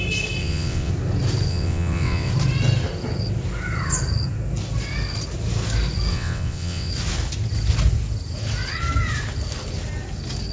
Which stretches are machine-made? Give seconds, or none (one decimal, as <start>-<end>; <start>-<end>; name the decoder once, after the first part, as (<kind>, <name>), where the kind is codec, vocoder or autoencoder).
0.4-0.9 (vocoder, WaveNeXt); 1.5-2.3; 6.1-6.9